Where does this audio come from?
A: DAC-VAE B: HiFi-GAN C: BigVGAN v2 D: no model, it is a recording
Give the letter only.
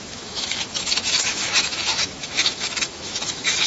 A